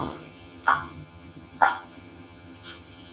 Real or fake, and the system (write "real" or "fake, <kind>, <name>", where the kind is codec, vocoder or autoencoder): fake, vocoder, HiFi-GAN